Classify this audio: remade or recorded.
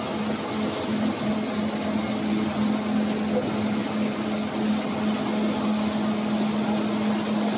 recorded